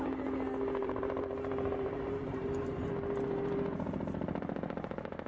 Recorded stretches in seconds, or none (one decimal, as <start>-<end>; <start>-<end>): 0.0-0.8; 2.9-5.3